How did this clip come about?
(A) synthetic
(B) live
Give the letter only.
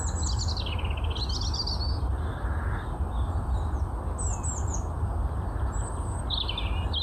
B